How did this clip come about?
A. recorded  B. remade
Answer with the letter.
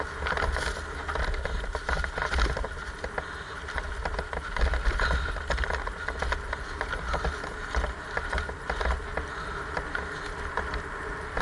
A